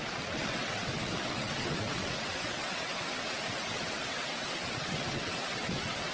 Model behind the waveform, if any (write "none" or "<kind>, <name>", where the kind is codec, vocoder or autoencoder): vocoder, WaveNeXt